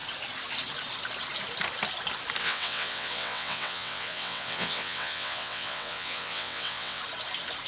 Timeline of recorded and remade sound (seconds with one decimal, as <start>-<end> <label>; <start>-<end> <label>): 0.0-2.4 recorded; 2.4-7.0 remade; 7.0-7.7 recorded